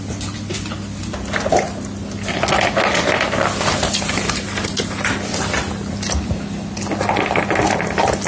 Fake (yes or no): no